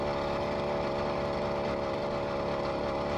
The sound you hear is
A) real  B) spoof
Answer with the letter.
A